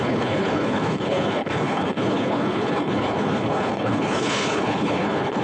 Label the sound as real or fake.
fake